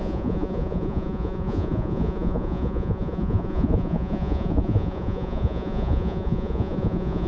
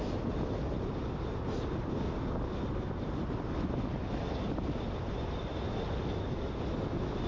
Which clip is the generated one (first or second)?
first